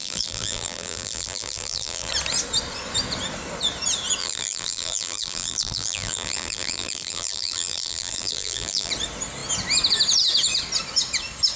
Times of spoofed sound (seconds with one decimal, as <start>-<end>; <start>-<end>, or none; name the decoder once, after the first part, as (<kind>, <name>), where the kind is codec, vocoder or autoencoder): 0.0-2.1 (vocoder, BigVGAN v2); 4.2-8.9